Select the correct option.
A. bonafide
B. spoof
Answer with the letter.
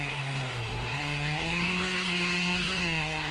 B